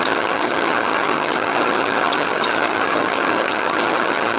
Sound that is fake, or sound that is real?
fake